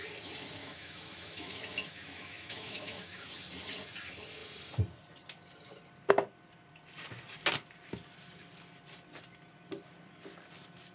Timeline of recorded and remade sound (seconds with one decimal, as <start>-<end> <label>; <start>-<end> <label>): 0.0-0.6 recorded; 0.6-3.3 remade; 3.3-10.9 recorded